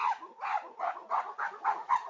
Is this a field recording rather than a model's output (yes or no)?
no